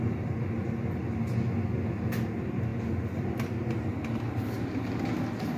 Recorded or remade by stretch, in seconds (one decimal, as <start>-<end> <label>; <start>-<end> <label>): 0.0-5.6 recorded